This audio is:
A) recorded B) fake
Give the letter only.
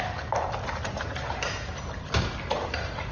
B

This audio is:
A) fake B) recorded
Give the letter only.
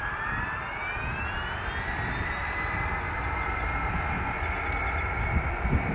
B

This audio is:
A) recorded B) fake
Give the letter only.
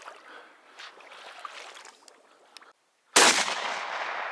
A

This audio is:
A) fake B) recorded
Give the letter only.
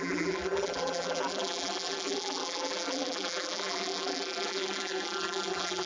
A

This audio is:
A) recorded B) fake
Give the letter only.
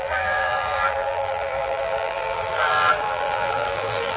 B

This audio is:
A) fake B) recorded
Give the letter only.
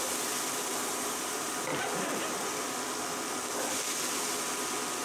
B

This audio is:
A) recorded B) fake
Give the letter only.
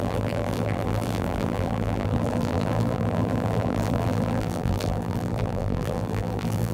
B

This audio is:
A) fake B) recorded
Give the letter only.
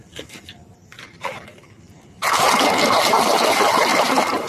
A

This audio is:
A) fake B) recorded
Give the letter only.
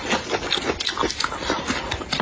B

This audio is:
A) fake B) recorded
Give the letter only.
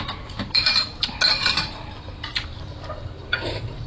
A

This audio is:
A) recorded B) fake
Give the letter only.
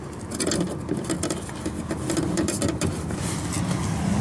A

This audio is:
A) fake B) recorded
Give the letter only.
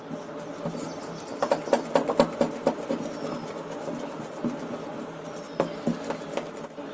B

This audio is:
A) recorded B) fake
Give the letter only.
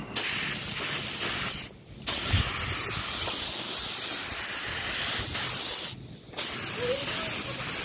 A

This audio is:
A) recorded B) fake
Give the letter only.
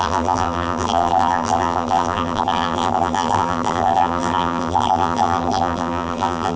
B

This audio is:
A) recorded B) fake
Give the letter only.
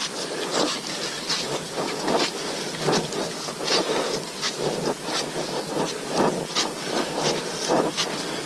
A